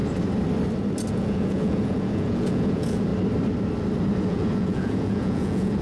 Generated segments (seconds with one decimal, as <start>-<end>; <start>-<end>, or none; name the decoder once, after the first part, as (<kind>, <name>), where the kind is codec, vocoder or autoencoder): 1.1-3.1 (vocoder, Vocos); 4.3-5.8